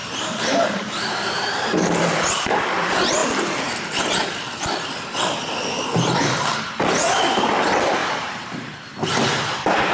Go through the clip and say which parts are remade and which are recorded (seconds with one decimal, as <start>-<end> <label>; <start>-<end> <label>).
0.0-2.0 remade; 2.0-3.2 recorded; 3.2-4.0 remade; 4.0-8.0 recorded; 8.0-9.2 remade; 9.2-9.9 recorded